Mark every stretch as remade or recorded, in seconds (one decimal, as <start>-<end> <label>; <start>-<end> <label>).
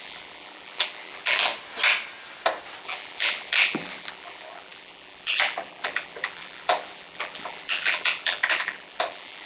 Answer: 0.0-1.5 remade; 1.5-2.8 recorded; 2.8-9.5 remade